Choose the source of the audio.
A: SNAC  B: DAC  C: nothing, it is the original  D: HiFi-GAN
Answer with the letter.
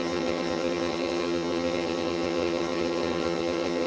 D